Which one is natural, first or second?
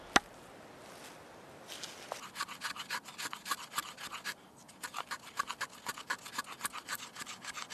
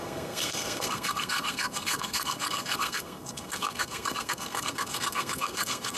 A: first